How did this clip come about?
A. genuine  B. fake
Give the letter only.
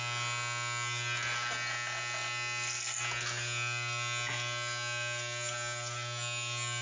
A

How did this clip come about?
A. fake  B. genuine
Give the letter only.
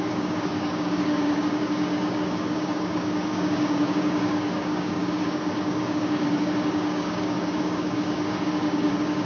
A